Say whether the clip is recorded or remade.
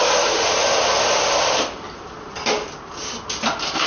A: recorded